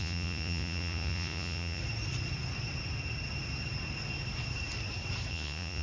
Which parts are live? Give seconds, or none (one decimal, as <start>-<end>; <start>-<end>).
1.8-5.3